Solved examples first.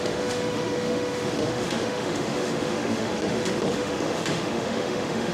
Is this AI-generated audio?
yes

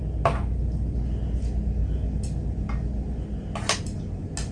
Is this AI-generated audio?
no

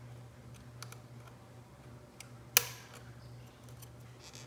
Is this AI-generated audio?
no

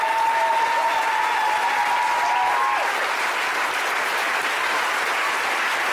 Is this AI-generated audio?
no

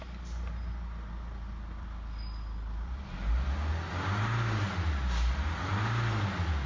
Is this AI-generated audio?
no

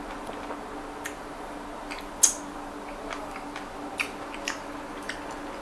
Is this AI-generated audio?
no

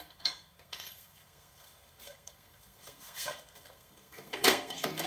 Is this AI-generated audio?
yes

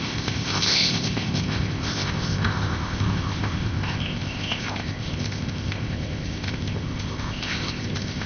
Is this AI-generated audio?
yes